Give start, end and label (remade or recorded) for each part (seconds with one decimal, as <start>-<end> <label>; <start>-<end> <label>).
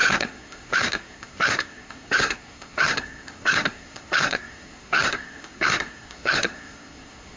0.0-7.4 remade